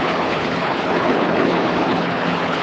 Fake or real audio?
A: fake